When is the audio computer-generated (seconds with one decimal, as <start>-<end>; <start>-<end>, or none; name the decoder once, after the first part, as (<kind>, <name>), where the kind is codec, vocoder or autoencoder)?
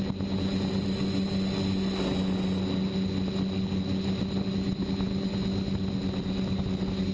none